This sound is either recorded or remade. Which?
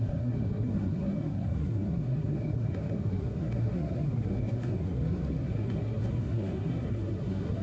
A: remade